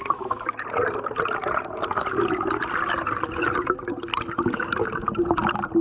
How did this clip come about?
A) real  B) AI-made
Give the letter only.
A